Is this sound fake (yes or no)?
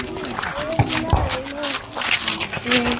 no